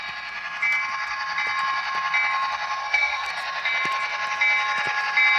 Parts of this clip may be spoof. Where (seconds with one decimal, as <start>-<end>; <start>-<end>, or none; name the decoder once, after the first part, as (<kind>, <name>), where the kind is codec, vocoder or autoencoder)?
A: 2.8-3.3 (codec, SNAC)